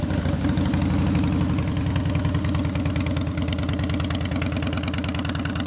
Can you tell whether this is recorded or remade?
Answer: recorded